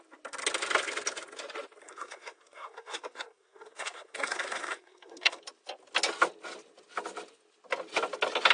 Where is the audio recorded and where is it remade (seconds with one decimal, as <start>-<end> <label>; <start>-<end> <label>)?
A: 0.0-1.8 recorded; 1.8-5.4 remade; 5.4-8.5 recorded